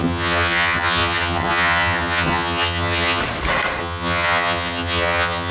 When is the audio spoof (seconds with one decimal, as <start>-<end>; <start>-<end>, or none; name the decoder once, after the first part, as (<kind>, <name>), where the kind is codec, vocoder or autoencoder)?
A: 0.0-3.2 (vocoder, HiFi-GAN); 3.8-5.5